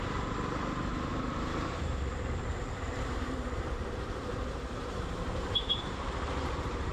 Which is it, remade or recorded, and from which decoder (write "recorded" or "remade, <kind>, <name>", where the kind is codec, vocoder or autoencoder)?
remade, vocoder, BigVGAN v2